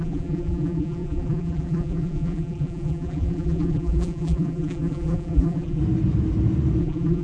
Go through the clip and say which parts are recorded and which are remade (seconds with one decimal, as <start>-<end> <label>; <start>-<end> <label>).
0.0-5.8 remade; 5.8-6.8 recorded; 6.8-7.2 remade